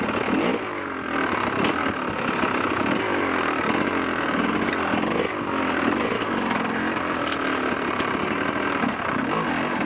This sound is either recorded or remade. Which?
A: recorded